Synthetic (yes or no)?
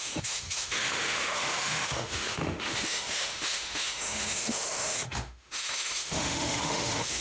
yes